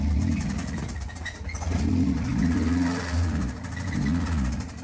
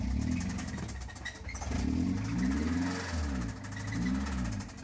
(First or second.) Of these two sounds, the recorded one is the second